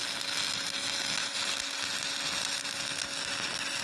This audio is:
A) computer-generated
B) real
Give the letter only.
B